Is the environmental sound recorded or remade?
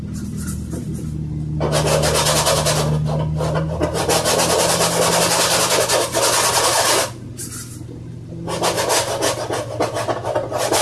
recorded